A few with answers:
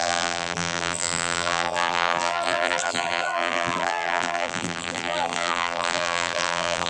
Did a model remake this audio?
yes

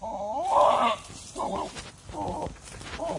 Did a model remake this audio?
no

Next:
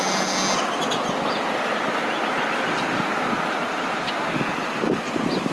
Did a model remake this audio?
no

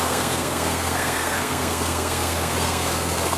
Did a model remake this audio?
yes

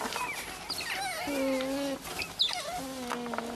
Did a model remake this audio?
no